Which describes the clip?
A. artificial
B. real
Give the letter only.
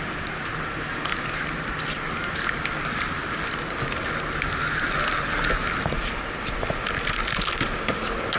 B